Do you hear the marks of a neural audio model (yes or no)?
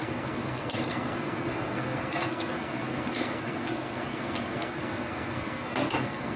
yes